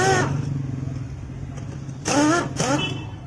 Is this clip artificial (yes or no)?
no